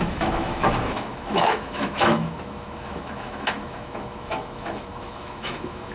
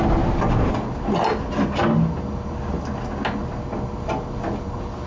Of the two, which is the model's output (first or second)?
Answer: first